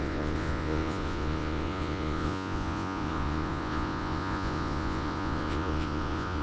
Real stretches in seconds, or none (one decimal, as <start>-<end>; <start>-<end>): none